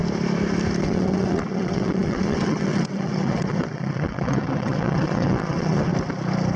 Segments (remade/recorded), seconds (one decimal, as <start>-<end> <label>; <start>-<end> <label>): 0.0-0.8 recorded; 0.8-5.9 remade; 5.9-6.6 recorded